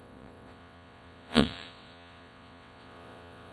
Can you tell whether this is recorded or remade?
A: remade